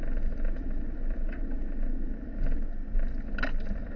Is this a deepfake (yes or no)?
no